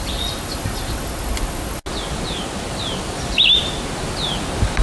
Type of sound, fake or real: real